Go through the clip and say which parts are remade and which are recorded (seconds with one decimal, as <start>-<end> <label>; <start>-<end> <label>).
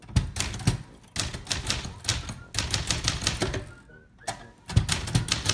0.0-5.5 recorded